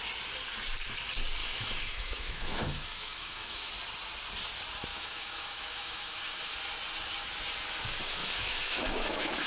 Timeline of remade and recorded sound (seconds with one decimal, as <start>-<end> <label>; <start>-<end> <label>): 0.0-1.4 recorded; 1.4-3.7 remade; 3.7-4.9 recorded; 4.9-6.5 remade; 6.5-8.2 recorded; 8.2-9.5 remade